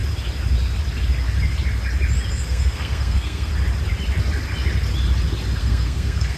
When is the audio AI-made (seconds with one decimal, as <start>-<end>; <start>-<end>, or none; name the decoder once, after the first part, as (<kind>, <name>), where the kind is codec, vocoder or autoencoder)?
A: 2.3-3.5 (codec, SNAC); 5.6-6.4